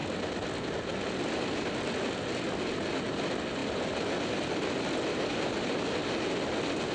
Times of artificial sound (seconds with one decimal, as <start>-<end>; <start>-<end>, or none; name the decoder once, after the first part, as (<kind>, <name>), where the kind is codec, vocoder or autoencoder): none